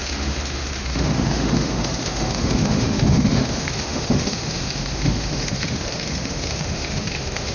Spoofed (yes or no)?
yes